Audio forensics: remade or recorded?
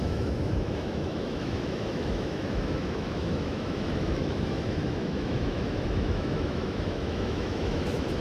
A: remade